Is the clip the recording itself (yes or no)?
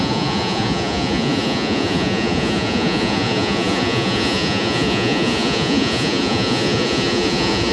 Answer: no